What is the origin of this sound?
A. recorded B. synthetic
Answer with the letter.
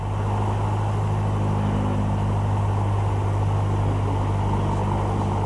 A